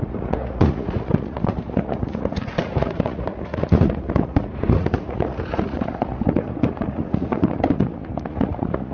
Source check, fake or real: fake